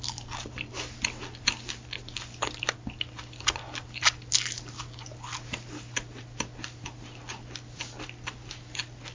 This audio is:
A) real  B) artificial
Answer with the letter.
A